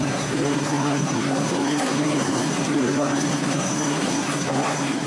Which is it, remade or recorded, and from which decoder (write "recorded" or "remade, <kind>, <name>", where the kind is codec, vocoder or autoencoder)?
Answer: remade, codec, SNAC